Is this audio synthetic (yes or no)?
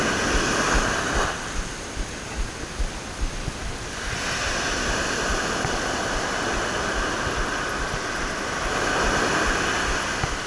no